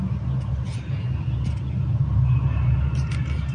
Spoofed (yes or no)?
no